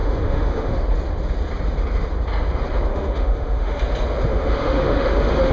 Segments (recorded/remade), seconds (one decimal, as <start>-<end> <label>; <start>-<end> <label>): 0.0-0.8 remade; 0.8-2.9 recorded; 2.9-3.8 remade; 3.8-4.3 recorded; 4.3-5.5 remade